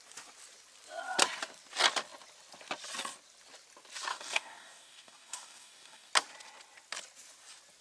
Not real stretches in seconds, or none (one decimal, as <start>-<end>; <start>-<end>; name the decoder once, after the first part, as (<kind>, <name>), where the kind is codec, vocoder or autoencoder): 4.1-6.1 (codec, DAC)